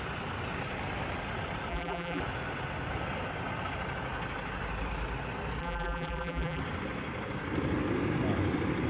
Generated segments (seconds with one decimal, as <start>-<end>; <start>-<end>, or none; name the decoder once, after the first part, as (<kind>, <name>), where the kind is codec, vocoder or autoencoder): 1.7-2.2 (vocoder, BigVGAN v2); 5.6-6.6